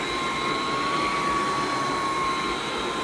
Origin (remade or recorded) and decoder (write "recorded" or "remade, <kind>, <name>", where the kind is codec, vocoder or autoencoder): recorded